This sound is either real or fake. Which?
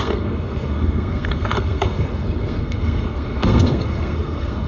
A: fake